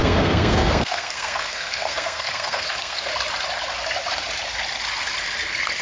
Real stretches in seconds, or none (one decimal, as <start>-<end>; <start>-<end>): 3.1-5.8